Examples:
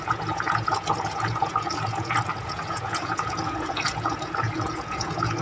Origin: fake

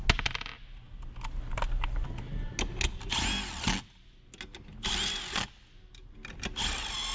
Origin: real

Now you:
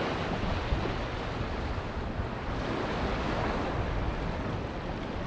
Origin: real